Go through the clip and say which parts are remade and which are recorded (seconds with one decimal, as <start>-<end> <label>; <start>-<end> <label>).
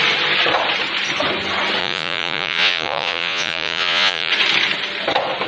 0.0-1.8 recorded; 1.8-4.3 remade; 4.3-5.5 recorded